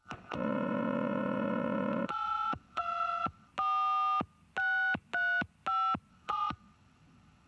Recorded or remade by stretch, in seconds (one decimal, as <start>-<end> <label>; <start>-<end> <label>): 0.0-3.5 remade; 3.5-6.1 recorded; 6.1-7.5 remade